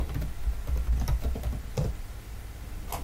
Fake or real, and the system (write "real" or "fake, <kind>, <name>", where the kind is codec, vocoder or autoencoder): real